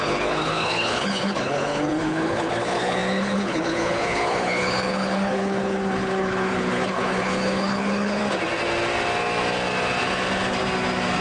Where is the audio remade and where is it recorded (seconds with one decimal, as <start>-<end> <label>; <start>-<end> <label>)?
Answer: 0.0-8.2 remade; 8.2-11.2 recorded

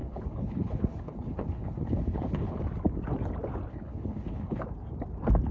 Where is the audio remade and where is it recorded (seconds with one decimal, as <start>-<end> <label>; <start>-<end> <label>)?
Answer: 0.0-2.6 remade; 2.6-3.7 recorded; 3.7-4.6 remade; 4.6-5.5 recorded

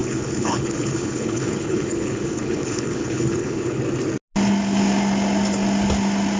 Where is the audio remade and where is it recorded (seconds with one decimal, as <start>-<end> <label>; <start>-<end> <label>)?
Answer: 0.0-3.8 remade; 3.8-6.4 recorded